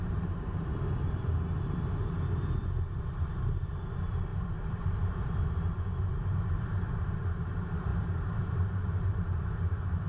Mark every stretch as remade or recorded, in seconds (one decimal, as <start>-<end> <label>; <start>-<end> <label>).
0.0-0.7 remade; 0.7-3.0 recorded; 3.0-10.1 remade

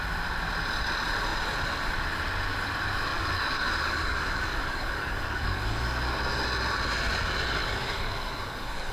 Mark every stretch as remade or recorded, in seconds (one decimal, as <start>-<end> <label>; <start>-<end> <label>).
0.0-3.1 recorded; 3.1-6.1 remade; 6.1-7.6 recorded; 7.6-8.9 remade

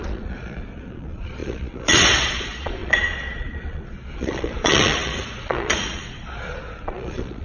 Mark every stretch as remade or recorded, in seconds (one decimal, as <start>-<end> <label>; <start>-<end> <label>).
0.0-7.4 remade

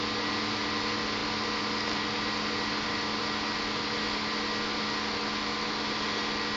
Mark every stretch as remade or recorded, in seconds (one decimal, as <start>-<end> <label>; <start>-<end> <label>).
0.0-6.6 recorded

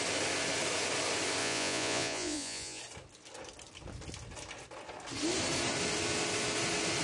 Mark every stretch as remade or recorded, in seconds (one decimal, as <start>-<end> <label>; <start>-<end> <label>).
0.0-1.4 recorded; 1.4-2.8 remade; 2.8-7.0 recorded

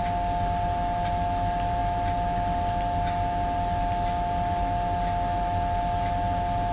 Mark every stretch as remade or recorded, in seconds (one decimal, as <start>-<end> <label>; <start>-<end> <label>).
0.0-6.7 recorded

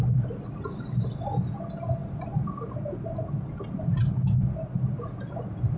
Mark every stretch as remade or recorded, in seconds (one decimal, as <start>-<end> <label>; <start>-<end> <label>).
0.0-5.8 recorded

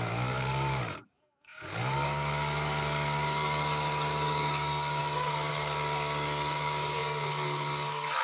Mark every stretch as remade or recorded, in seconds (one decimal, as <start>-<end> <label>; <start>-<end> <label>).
0.0-8.2 remade